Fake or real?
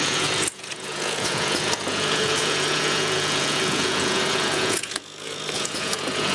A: fake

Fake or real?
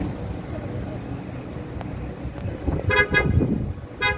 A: real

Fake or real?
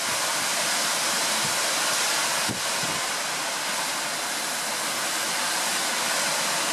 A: real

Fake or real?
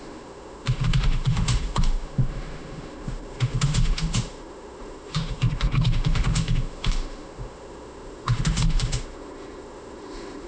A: fake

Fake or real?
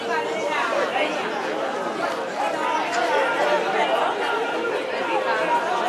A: real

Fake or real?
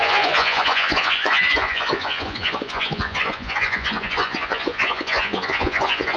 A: fake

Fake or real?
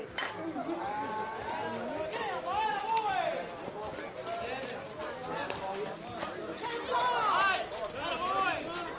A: real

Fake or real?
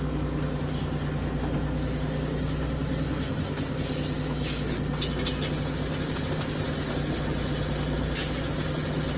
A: real